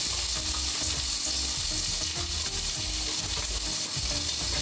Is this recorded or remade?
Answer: recorded